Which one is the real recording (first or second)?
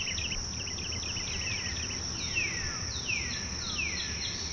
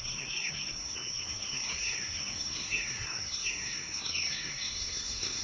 first